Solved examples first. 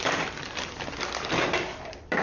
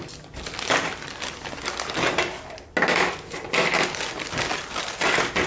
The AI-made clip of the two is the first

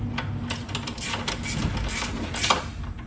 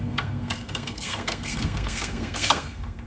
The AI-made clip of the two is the second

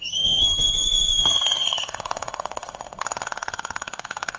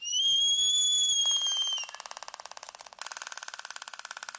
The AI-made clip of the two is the first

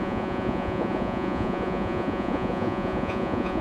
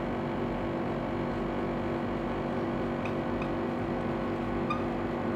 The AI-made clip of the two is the first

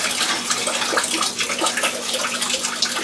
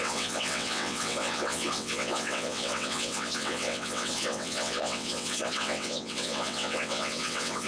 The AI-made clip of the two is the second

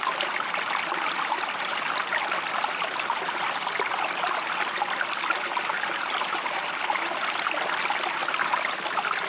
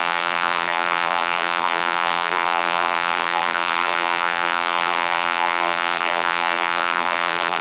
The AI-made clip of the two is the second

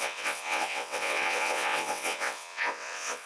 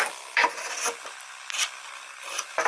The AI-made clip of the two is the first